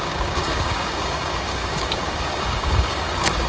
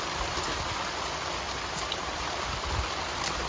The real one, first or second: second